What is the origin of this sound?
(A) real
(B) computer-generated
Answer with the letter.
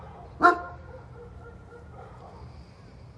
A